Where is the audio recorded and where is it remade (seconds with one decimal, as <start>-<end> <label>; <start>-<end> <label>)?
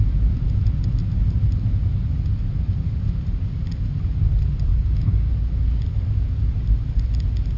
0.0-4.7 recorded; 4.7-5.3 remade; 5.3-7.6 recorded